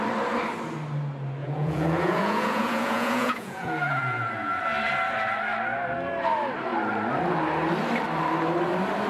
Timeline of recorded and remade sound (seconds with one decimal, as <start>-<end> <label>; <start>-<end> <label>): 0.0-1.4 recorded; 1.4-4.6 remade; 4.6-9.1 recorded